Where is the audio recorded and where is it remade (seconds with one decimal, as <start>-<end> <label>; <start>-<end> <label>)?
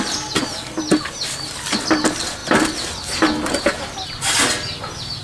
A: 0.0-5.2 recorded